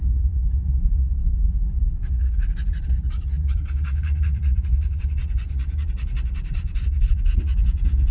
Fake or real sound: fake